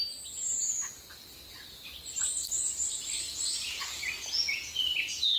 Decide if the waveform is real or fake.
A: real